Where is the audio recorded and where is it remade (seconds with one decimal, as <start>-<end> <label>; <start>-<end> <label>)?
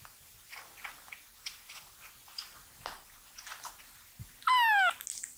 0.0-5.4 recorded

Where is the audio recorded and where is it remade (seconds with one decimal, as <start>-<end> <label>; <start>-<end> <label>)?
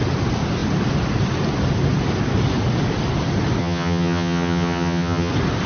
0.0-3.6 recorded; 3.6-5.3 remade; 5.3-5.7 recorded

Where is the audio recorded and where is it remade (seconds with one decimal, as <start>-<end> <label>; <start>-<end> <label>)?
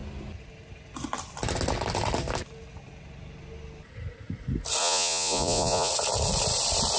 0.0-4.8 recorded; 4.8-5.9 remade; 5.9-7.0 recorded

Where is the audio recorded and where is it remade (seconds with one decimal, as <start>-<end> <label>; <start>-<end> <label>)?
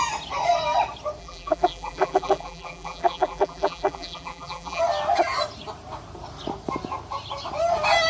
0.0-1.2 recorded; 1.2-4.8 remade; 4.8-8.1 recorded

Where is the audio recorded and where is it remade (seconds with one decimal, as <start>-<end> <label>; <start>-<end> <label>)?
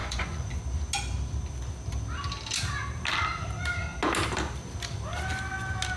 0.0-0.6 remade; 0.6-6.0 recorded